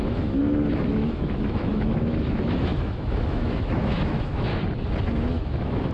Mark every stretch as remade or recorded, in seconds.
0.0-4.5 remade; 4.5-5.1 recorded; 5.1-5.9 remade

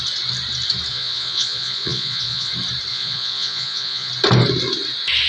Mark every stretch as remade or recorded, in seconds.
0.0-0.9 recorded; 0.9-2.5 remade; 2.5-2.9 recorded; 2.9-4.1 remade; 4.1-5.3 recorded

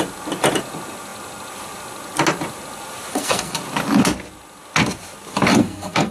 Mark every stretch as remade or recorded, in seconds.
0.0-3.1 recorded; 3.1-3.6 remade; 3.6-5.5 recorded; 5.5-6.1 remade

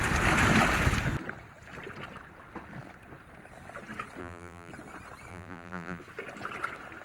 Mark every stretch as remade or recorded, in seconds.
0.0-4.2 recorded; 4.2-4.7 remade; 4.7-5.3 recorded; 5.3-6.0 remade; 6.0-7.0 recorded